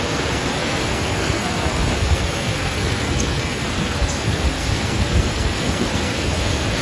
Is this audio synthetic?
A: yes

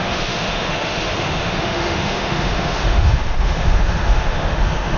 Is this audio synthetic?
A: yes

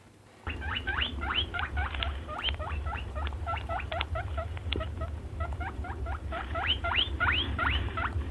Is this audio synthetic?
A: yes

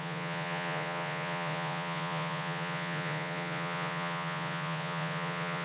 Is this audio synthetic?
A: yes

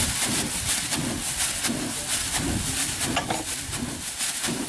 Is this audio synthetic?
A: no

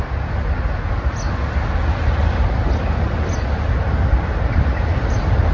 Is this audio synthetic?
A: no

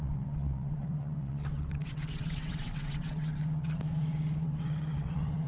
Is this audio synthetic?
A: yes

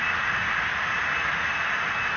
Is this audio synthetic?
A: no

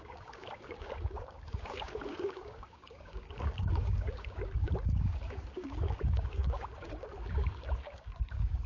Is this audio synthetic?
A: yes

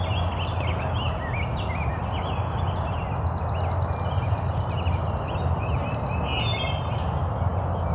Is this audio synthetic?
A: no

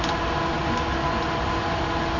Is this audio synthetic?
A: no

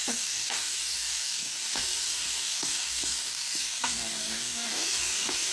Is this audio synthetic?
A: yes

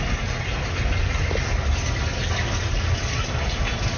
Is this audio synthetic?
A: no